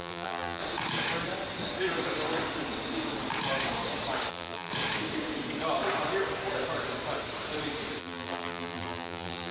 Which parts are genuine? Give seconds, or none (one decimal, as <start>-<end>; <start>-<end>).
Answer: 0.6-4.3; 4.7-8.0